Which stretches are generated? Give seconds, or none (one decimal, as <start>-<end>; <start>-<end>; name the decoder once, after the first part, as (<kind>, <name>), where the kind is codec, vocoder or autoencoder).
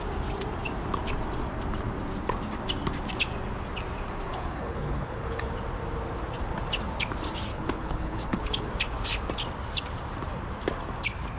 4.3-5.4 (codec, HILCodec); 7.5-8.7